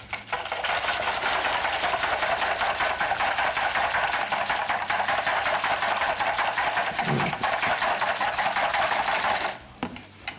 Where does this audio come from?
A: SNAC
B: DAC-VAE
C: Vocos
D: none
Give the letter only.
D